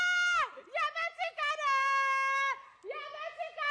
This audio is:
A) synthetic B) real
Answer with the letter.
B